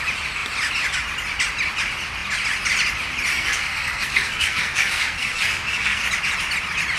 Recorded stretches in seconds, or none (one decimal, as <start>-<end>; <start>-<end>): 0.0-3.3; 6.1-7.0